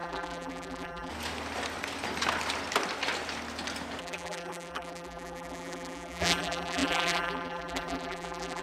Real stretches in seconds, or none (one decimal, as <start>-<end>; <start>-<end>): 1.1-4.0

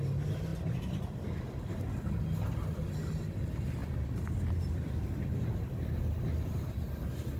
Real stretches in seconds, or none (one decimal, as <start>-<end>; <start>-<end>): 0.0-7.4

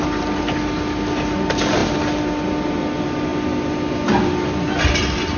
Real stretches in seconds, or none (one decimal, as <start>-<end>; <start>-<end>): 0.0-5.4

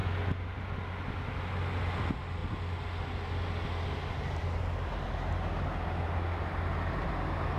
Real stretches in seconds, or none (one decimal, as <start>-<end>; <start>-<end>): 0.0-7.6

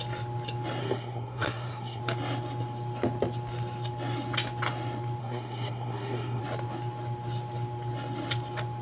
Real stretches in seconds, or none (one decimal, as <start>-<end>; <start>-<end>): 0.0-0.8; 2.0-5.2; 6.4-8.8

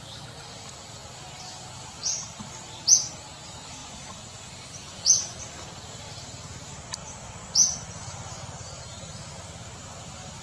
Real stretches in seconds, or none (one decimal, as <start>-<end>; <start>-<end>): 0.0-3.8; 5.4-7.0; 8.8-10.4

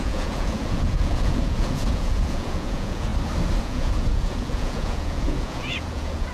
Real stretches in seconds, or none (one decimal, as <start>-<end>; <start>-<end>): 3.1-3.6